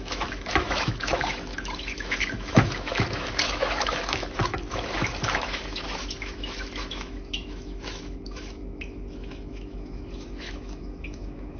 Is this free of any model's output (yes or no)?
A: no